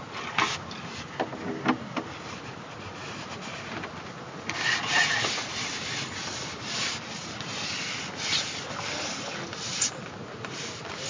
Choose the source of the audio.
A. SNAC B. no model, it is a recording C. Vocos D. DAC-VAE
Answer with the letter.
B